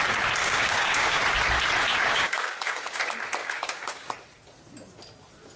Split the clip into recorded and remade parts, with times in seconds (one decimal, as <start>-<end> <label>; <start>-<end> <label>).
0.0-0.4 recorded; 0.4-1.2 remade; 1.2-1.9 recorded; 1.9-3.0 remade; 3.0-3.4 recorded; 3.4-4.1 remade; 4.1-5.6 recorded